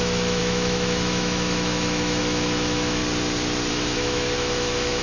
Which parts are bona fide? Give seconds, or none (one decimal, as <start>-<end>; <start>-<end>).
3.0-3.7